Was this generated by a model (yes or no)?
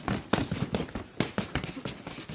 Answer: no